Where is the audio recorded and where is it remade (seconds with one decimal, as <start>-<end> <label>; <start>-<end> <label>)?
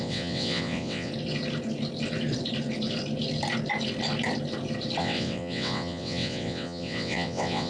0.0-1.1 remade; 1.1-5.0 recorded; 5.0-7.7 remade